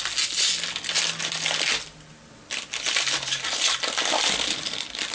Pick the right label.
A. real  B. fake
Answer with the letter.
A